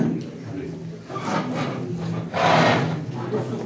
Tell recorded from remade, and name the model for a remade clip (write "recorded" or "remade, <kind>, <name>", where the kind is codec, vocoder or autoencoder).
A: recorded